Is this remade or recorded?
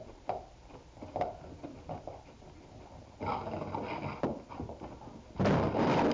recorded